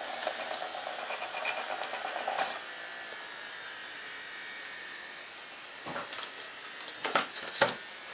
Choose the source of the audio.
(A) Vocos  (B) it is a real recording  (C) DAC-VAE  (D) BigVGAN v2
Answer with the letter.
B